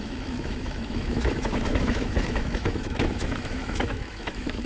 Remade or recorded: remade